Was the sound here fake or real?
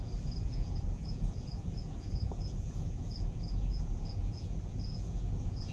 fake